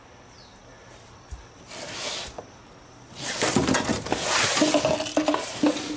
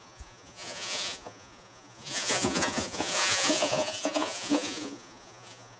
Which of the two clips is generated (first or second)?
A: second